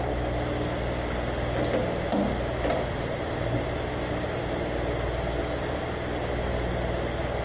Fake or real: real